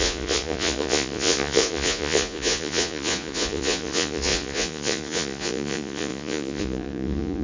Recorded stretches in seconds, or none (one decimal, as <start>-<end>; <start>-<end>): none